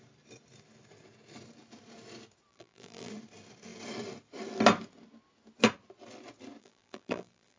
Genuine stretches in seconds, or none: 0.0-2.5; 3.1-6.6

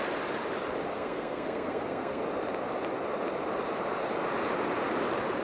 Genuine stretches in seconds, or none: 0.0-0.9; 2.2-5.4

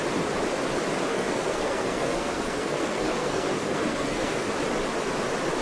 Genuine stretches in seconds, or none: 0.0-1.1; 4.5-5.6